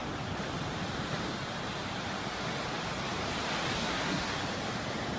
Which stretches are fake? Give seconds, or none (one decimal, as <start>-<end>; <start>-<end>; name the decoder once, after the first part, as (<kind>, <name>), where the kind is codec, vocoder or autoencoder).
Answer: 3.8-4.4 (codec, SNAC)